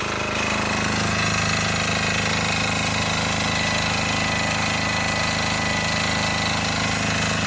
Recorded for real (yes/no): yes